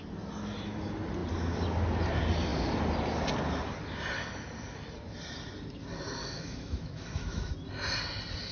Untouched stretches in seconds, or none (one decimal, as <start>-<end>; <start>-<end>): 0.0-6.2; 7.5-8.5